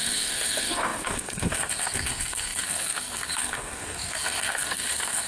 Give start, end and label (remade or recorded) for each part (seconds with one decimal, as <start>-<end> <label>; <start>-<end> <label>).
0.0-5.3 remade